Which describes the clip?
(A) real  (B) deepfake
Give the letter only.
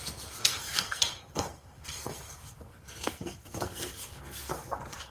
B